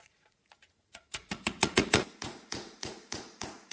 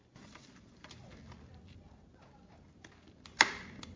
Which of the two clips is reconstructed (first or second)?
first